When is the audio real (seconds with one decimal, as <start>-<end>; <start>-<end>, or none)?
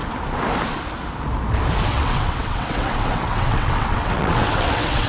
0.0-1.9